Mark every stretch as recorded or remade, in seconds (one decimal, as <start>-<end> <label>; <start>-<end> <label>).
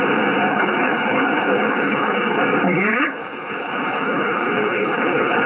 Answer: 0.0-0.5 recorded; 0.5-2.4 remade; 2.4-2.9 recorded; 2.9-5.5 remade